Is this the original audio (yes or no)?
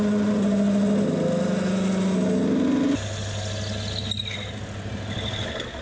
yes